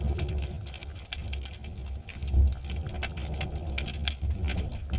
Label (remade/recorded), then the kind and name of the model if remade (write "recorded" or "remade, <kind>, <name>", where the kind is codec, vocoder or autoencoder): recorded